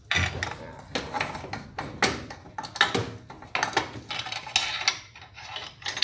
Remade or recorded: recorded